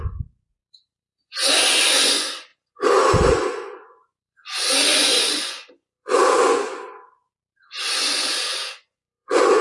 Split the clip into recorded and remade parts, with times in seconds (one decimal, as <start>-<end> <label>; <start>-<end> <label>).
0.0-2.5 remade; 2.5-3.3 recorded; 3.3-9.6 remade